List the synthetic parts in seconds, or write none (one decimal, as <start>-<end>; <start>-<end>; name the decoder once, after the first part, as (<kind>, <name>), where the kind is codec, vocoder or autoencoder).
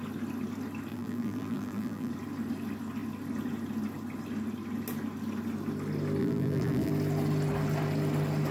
0.9-2.1 (vocoder, BigVGAN v2); 6.2-6.9